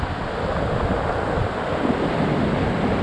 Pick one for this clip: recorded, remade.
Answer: recorded